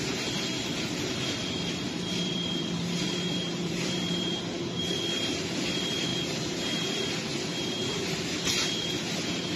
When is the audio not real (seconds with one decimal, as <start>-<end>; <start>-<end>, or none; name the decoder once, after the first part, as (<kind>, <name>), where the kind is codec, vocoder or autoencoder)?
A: 0.0-9.6 (vocoder, BigVGAN v2)